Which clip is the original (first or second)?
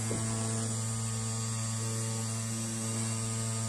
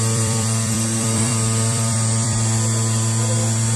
first